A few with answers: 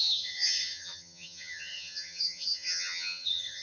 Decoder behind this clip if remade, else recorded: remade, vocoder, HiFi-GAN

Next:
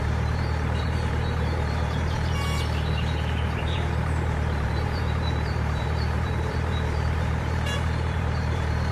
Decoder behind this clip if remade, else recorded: remade, vocoder, BigVGAN v2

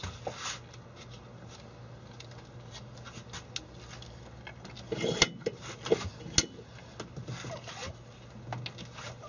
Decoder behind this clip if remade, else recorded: recorded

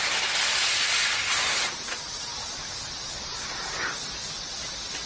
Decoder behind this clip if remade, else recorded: recorded